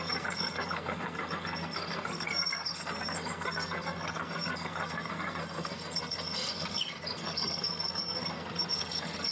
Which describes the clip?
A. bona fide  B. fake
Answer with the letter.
B